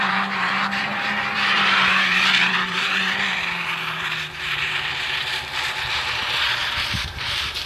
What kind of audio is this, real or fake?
fake